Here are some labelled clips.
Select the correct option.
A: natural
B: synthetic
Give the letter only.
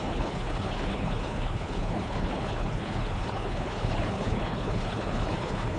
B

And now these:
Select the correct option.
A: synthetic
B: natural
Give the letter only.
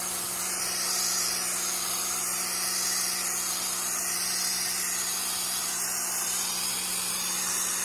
B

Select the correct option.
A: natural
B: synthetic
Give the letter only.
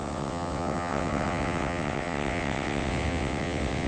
B